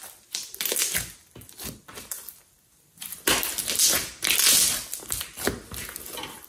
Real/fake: real